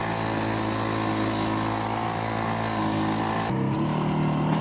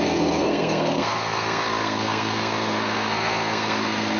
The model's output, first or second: second